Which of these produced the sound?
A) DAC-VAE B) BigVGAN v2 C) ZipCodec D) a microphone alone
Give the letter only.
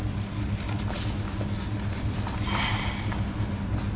D